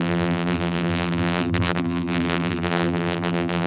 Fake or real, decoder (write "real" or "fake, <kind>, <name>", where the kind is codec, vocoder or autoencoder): fake, vocoder, BigVGAN v2